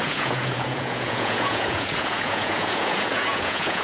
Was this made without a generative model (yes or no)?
no